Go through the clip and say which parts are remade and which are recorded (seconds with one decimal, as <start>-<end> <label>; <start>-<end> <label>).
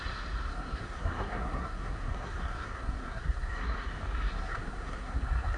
0.0-0.5 recorded; 0.5-3.9 remade; 3.9-4.4 recorded; 4.4-5.6 remade